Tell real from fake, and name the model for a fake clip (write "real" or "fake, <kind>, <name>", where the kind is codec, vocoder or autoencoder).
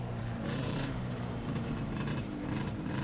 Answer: fake, vocoder, BigVGAN v2